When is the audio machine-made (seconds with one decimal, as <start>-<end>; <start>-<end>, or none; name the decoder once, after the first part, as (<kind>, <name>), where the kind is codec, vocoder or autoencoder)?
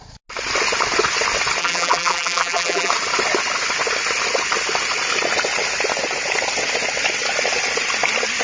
1.6-2.9 (vocoder, BigVGAN v2)